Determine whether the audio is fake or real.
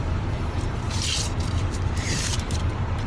fake